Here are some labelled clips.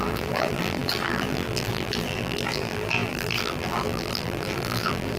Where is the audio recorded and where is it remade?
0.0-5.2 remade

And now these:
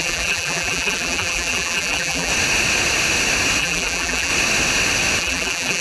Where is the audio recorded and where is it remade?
0.0-2.3 remade; 2.3-3.6 recorded; 3.6-4.3 remade; 4.3-5.2 recorded; 5.2-5.8 remade

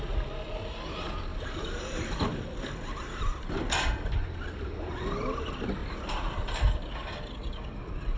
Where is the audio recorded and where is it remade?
0.0-1.3 recorded; 1.3-4.1 remade; 4.1-5.8 recorded; 5.8-6.7 remade; 6.7-8.2 recorded

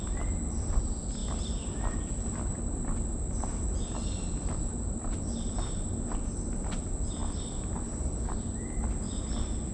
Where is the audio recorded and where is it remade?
0.0-9.7 recorded

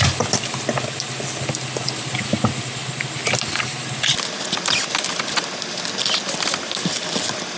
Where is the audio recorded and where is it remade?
0.0-7.6 recorded